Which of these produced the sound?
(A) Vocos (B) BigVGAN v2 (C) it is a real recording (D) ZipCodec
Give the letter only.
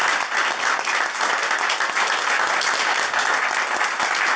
C